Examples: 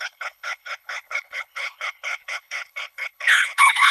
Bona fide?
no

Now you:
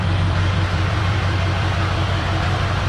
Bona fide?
no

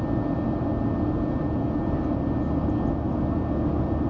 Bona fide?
yes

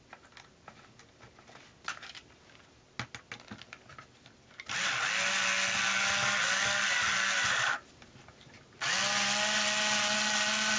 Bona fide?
yes